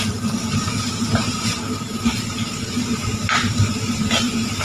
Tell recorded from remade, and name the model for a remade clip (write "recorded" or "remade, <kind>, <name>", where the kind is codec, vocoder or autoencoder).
recorded